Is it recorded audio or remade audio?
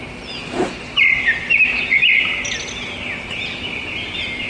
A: recorded